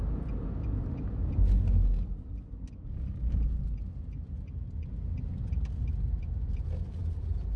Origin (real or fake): real